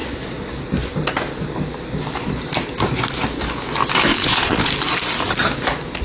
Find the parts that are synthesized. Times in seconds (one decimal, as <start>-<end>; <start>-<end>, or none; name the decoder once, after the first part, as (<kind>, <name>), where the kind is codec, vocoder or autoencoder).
4.1-4.7 (vocoder, Vocos)